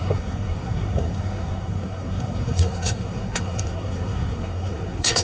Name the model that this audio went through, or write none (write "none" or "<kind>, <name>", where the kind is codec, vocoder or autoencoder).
codec, SNAC